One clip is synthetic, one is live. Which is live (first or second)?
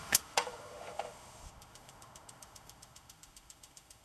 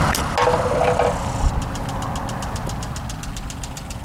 second